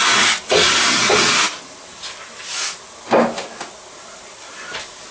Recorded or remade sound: recorded